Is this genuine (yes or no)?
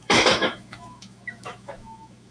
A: no